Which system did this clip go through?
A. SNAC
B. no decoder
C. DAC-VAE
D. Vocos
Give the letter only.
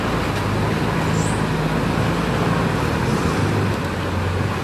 B